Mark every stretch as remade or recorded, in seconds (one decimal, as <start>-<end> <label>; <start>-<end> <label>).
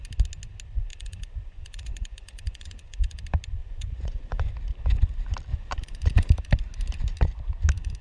0.0-0.9 recorded; 0.9-3.2 remade; 3.2-3.6 recorded; 3.6-4.5 remade; 4.5-5.5 recorded; 5.5-6.3 remade; 6.3-8.0 recorded